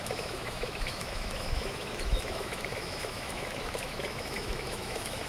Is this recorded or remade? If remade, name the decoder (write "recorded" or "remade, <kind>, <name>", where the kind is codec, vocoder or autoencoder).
remade, autoencoder, DAC-VAE